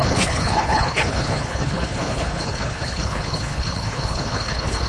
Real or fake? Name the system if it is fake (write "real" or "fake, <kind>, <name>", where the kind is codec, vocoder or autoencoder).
fake, codec, HILCodec